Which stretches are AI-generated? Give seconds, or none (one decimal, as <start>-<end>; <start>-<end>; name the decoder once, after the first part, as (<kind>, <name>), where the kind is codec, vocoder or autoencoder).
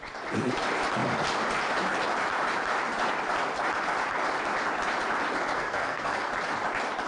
5.5-6.3 (codec, SNAC)